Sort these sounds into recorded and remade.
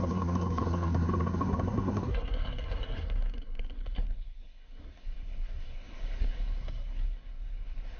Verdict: remade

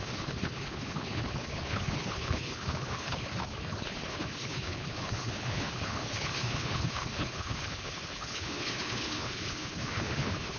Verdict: remade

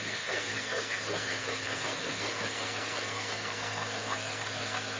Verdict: remade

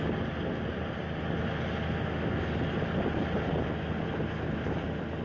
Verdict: recorded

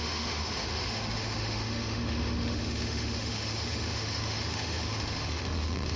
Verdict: remade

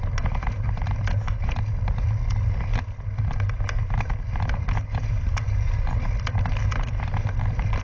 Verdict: recorded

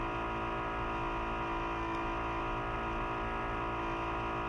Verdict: recorded